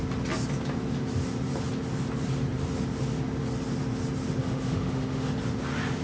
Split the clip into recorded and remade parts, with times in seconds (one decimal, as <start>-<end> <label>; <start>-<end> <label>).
0.0-4.4 recorded; 4.4-5.3 remade; 5.3-6.0 recorded